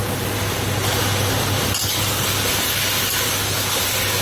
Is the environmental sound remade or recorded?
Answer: recorded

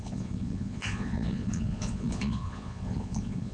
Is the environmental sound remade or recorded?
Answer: remade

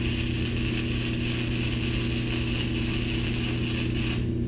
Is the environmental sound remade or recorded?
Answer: recorded